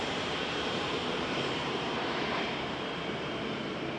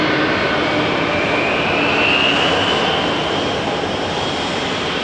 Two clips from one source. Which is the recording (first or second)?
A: second